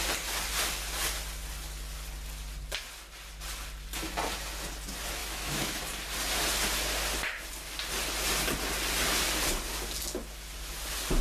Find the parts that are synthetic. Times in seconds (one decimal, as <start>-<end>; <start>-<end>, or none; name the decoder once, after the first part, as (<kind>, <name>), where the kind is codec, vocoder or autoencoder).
5.2-5.8 (autoencoder, DAC-VAE)

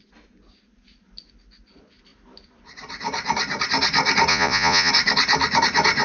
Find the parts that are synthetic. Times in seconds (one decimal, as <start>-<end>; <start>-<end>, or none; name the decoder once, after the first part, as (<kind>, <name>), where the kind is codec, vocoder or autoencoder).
4.3-4.9 (vocoder, Vocos)

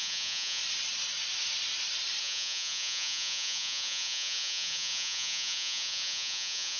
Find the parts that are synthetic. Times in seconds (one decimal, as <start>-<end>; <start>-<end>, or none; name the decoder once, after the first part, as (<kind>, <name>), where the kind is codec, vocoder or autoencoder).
0.0-0.6 (vocoder, Vocos); 2.2-6.8

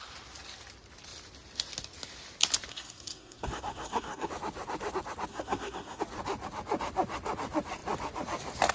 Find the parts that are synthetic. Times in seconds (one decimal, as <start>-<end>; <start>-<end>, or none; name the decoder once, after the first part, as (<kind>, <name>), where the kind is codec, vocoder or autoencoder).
2.7-4.3 (codec, SNAC); 5.3-6.0

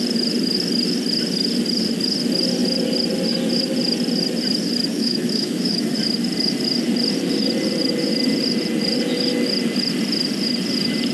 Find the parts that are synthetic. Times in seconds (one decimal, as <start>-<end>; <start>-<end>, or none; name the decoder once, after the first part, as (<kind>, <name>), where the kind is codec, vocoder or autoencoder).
4.9-5.9 (autoencoder, DAC-VAE)

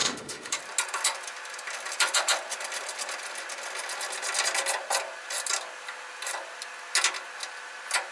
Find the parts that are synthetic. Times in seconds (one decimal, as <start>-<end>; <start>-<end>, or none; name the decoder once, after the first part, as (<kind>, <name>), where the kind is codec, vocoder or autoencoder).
0.0-0.6 (autoencoder, DAC-VAE)

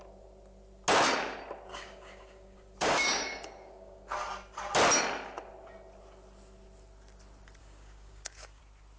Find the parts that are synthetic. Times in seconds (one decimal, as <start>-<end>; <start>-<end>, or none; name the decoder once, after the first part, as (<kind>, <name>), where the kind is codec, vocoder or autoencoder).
1.7-4.1 (codec, DAC); 7.6-8.6

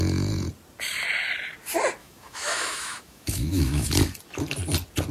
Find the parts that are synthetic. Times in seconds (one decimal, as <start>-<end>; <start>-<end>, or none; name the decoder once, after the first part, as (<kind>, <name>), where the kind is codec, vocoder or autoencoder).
2.0-3.9 (autoencoder, DAC-VAE)